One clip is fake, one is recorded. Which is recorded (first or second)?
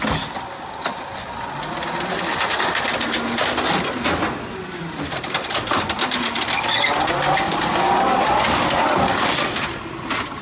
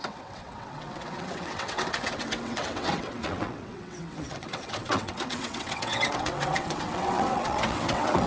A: first